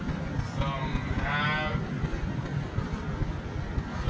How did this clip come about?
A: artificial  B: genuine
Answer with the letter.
B